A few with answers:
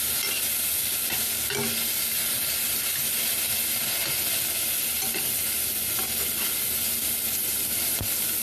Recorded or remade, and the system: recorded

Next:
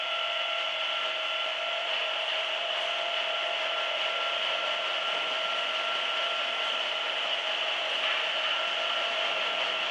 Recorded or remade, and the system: remade, vocoder, BigVGAN v2